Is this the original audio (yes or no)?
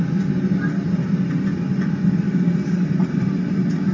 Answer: yes